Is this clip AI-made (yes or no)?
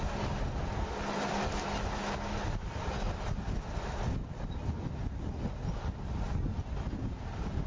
no